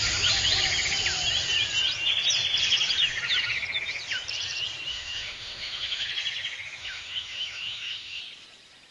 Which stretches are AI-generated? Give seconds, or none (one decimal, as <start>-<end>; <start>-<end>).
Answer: 4.9-6.1; 6.8-8.2

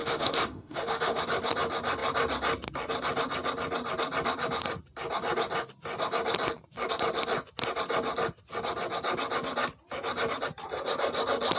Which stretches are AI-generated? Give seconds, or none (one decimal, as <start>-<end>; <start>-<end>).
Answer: 0.0-1.2

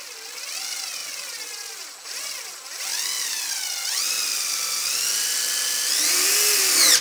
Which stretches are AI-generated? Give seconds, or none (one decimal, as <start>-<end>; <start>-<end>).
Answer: none

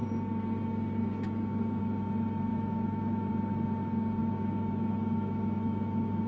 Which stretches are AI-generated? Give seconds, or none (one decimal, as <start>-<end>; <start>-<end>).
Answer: 1.0-1.8; 2.5-3.3; 4.2-6.3

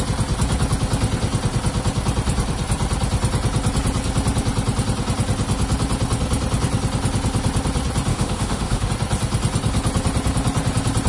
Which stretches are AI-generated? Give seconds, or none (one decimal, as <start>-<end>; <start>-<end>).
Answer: 8.1-8.9